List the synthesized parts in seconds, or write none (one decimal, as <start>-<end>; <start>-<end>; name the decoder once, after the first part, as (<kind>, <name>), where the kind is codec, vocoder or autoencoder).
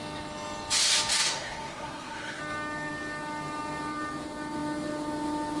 1.1-2.4 (codec, SNAC)